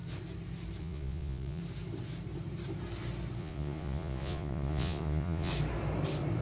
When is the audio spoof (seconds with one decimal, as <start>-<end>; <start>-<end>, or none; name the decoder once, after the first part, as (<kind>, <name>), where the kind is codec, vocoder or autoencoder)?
0.8-1.6 (vocoder, Vocos); 3.4-5.5